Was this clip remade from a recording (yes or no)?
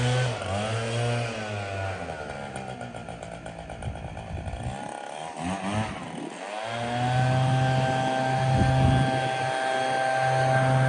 no